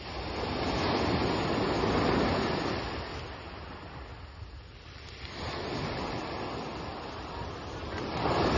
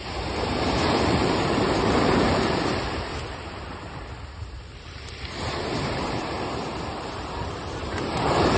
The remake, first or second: second